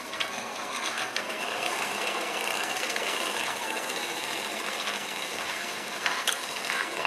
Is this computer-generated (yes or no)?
yes